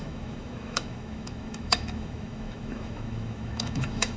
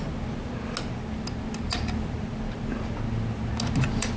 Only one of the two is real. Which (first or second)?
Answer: second